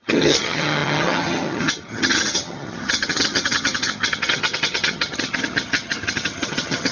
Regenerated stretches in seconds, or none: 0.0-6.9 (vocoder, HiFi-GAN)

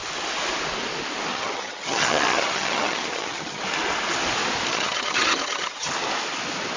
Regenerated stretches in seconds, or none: 1.3-3.6 (vocoder, HiFi-GAN); 4.7-5.9